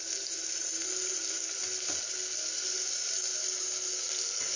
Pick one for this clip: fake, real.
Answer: real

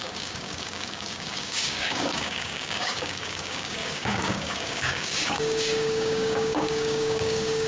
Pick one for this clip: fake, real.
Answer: fake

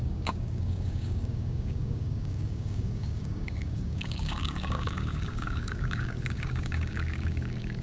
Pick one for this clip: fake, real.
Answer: fake